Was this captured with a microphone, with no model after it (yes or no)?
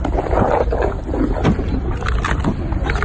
yes